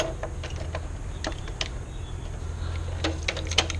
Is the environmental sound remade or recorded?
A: recorded